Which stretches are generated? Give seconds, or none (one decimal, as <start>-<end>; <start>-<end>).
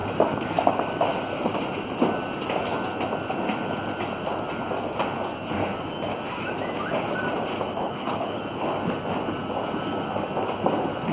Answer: 7.8-8.4